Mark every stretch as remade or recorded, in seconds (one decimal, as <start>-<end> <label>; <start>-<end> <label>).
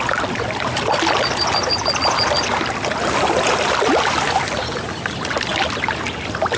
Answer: 0.0-6.6 recorded